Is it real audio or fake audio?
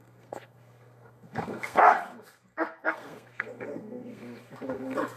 fake